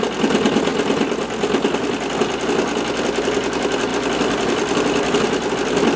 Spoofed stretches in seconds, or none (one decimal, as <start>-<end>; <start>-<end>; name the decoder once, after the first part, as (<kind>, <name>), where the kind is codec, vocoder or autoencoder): 0.7-1.2 (vocoder, BigVGAN v2); 3.9-5.5